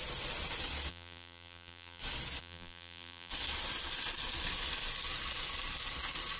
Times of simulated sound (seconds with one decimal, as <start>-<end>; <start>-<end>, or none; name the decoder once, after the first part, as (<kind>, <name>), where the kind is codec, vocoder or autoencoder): 0.9-2.0 (vocoder, BigVGAN v2); 2.4-3.3